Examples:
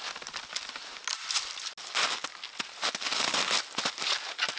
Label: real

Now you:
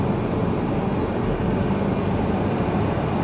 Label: real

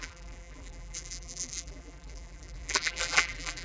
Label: fake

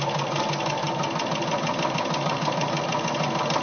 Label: real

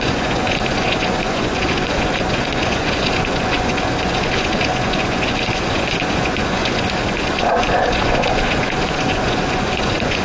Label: fake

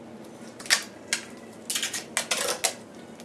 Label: real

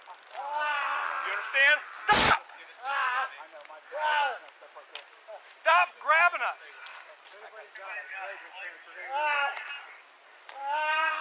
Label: real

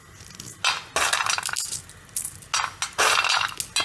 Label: real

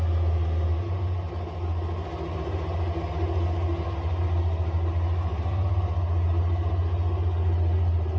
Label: real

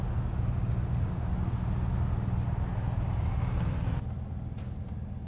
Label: real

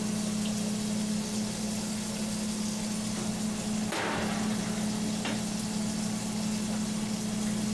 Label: real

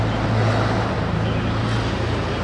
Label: real